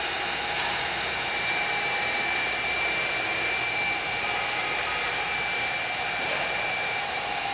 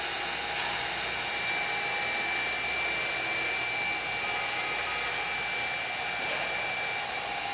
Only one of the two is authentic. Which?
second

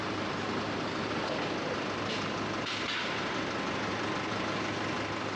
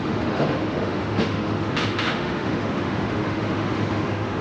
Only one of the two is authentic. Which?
first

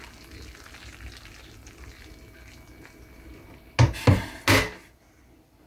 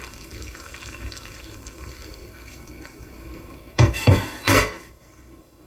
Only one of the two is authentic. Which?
first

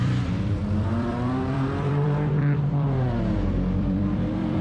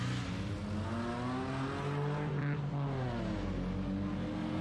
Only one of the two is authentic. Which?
second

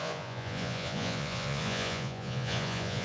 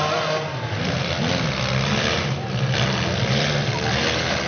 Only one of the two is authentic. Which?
second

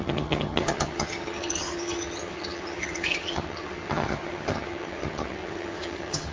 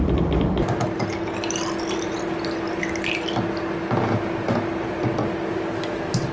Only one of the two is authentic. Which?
second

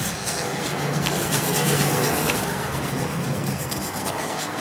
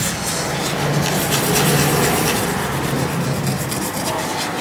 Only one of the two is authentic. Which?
second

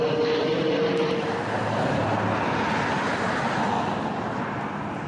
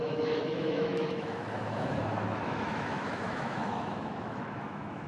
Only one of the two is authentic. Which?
first